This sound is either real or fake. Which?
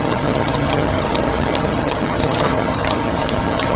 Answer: fake